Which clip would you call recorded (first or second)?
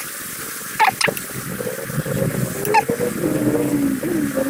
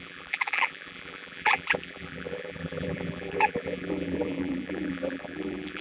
first